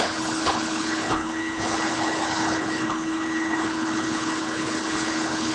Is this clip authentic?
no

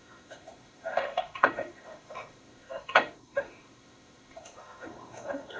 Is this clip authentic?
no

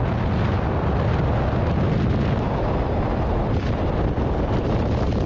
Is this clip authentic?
yes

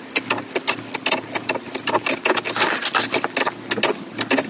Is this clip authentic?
yes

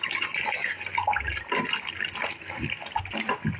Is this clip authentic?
yes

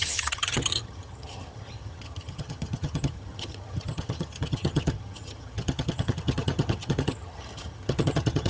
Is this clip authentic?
no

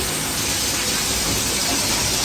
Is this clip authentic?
yes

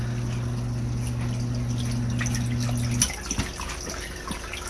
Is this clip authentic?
yes